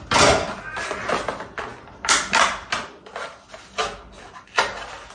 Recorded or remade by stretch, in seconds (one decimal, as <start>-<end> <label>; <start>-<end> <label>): 0.0-5.1 recorded